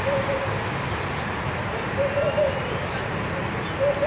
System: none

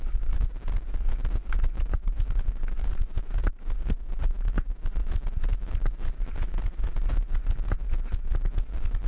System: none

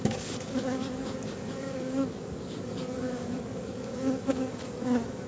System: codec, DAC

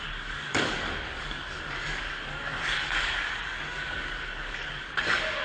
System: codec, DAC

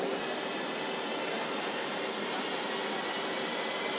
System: none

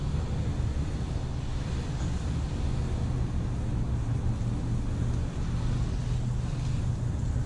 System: none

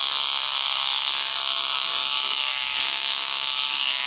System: codec, DAC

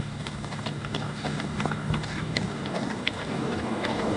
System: codec, DAC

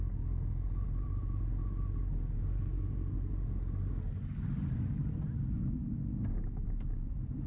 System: none